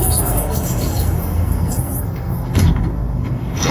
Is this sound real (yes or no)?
no